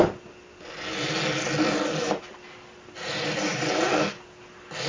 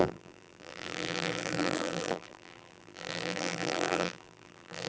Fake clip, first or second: second